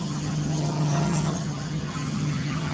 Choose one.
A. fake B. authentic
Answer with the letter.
A